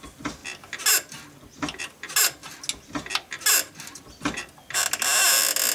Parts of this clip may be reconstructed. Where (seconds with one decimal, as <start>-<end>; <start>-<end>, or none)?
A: none

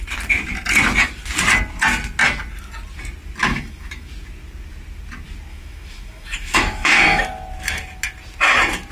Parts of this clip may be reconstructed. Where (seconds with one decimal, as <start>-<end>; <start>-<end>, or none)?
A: 3.4-4.1; 5.5-7.2

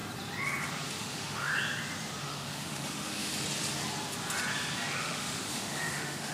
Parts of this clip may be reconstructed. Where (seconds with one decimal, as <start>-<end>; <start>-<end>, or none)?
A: 1.0-1.5; 2.2-3.3; 5.0-6.3

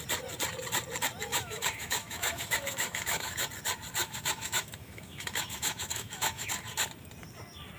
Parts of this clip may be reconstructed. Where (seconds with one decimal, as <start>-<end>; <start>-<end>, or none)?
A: 1.3-3.4; 4.0-6.5

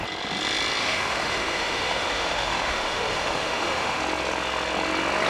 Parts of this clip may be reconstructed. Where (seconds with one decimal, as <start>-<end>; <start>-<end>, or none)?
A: 0.8-4.0

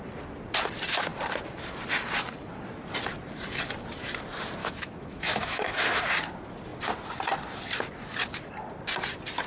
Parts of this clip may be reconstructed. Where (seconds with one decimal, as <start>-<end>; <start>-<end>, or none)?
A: 4.6-6.0

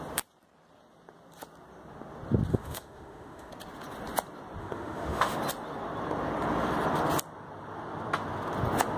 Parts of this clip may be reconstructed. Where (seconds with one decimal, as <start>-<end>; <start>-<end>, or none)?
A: 2.5-3.5; 4.6-5.4

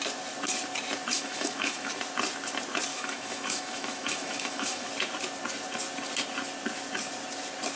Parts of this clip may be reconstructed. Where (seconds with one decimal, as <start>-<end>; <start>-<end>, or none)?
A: 1.1-1.9; 2.9-4.9